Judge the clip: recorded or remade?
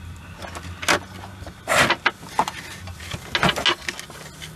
recorded